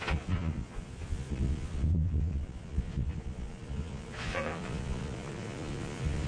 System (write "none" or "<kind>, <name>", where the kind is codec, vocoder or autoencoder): vocoder, Vocos